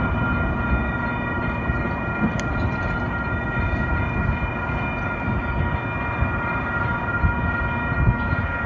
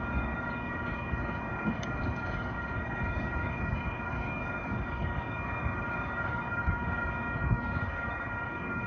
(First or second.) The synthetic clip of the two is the second